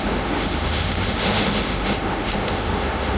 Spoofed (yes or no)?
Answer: yes